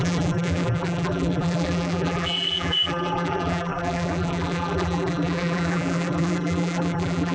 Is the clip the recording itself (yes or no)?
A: no